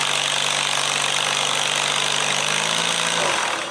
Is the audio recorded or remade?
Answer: recorded